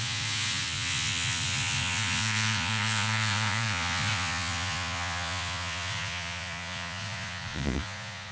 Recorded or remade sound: remade